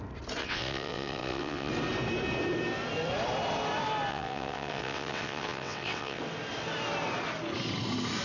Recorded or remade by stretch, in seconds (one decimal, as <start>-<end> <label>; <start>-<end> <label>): 0.0-0.4 recorded; 0.4-1.7 remade; 1.7-4.1 recorded; 4.1-6.2 remade; 6.2-8.2 recorded